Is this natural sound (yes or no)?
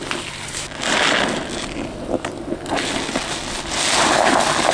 yes